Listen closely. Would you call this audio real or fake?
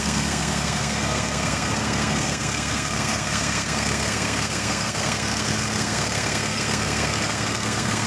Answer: fake